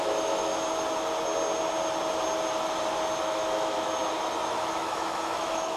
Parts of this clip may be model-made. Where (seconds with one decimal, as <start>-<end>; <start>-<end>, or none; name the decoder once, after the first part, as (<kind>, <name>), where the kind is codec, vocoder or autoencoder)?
0.0-0.5 (autoencoder, DAC-VAE); 3.2-4.0; 4.6-5.8